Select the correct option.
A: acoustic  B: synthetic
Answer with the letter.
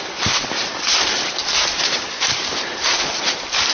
B